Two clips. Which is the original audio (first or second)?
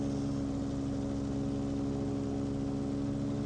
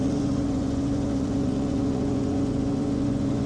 first